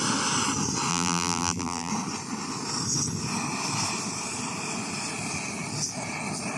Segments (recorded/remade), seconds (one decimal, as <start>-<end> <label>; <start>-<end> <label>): 0.0-0.9 recorded; 0.9-1.9 remade; 1.9-6.6 recorded